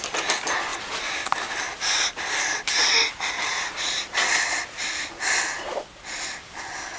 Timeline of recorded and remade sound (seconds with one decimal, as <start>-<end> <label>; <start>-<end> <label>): 0.0-7.0 recorded